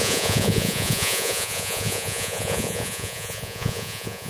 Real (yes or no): no